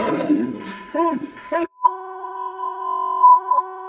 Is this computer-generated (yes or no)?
yes